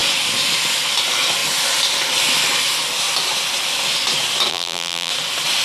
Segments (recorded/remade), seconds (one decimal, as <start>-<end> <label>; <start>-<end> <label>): 0.0-4.5 recorded; 4.5-5.1 remade; 5.1-5.6 recorded